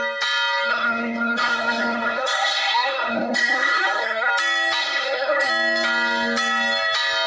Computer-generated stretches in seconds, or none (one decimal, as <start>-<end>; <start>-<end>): 0.7-4.3; 4.8-5.5